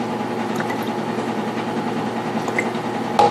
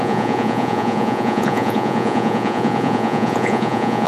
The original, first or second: first